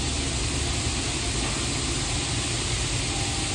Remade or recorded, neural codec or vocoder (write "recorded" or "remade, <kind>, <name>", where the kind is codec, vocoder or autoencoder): recorded